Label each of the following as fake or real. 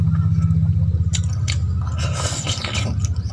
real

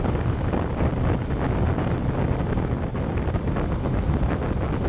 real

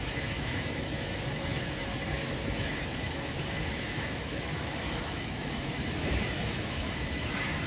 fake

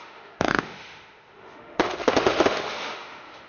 fake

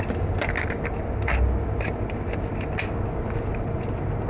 real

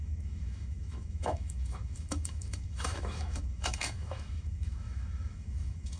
fake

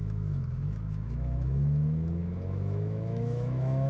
fake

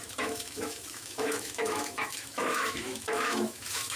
fake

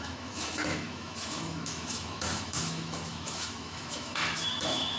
fake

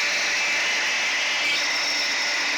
real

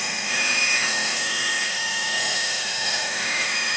fake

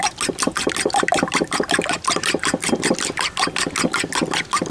real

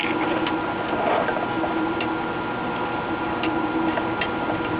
real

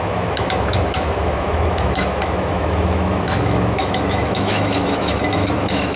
fake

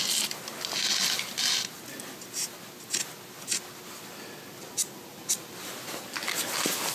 real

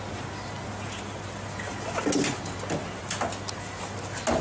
real